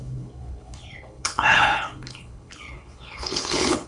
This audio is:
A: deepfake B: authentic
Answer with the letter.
A